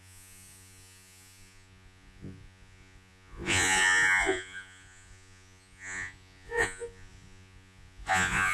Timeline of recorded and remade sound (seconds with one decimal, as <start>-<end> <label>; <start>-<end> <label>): 0.0-8.5 remade